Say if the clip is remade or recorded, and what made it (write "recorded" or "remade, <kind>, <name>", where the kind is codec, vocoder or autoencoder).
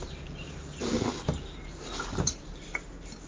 recorded